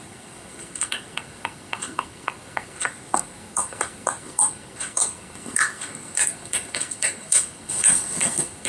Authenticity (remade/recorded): remade